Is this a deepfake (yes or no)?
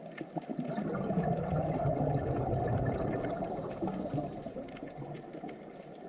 yes